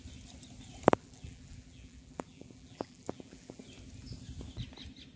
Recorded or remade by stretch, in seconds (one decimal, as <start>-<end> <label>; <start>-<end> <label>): 0.0-0.9 recorded; 0.9-3.6 remade; 3.6-5.2 recorded